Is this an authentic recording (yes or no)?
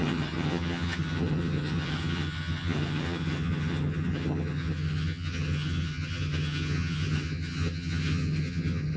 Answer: no